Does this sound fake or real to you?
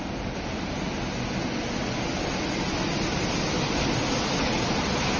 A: real